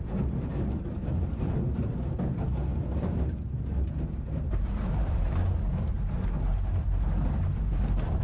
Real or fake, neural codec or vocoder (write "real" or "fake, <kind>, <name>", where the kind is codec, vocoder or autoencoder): fake, vocoder, BigVGAN v2